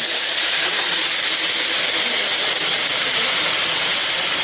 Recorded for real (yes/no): yes